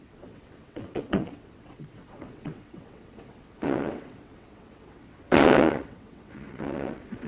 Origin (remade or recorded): remade